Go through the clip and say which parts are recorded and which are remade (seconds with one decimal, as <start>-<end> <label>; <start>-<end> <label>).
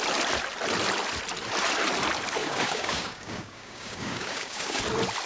0.0-2.4 recorded; 2.4-4.8 remade; 4.8-5.3 recorded